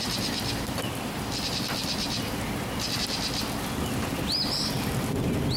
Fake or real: fake